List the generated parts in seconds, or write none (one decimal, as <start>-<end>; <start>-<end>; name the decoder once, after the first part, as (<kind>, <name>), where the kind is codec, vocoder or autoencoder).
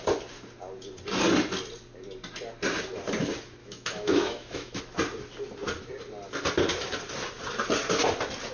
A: 3.6-4.8 (autoencoder, DAC-VAE)